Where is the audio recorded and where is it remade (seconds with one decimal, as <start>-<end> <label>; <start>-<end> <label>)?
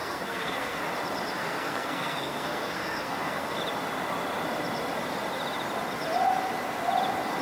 0.0-0.8 remade; 0.8-1.4 recorded; 1.4-3.6 remade; 3.6-7.4 recorded